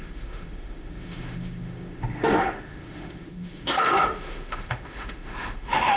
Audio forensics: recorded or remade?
remade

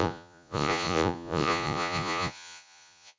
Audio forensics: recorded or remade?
remade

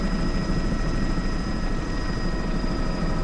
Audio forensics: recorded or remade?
remade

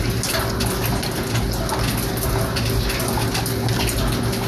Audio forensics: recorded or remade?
recorded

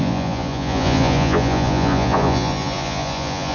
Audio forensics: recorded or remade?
remade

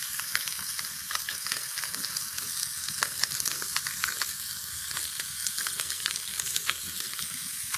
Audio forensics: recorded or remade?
remade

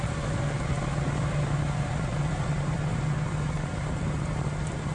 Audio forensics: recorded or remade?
recorded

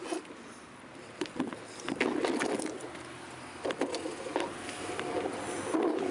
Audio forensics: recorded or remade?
recorded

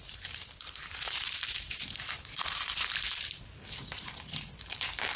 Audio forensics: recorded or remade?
remade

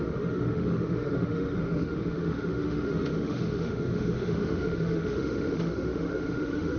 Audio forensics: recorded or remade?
remade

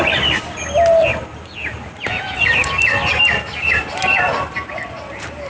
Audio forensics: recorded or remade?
recorded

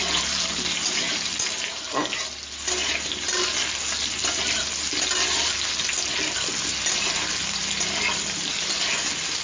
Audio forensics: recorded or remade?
recorded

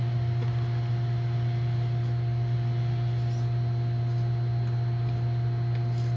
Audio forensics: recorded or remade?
recorded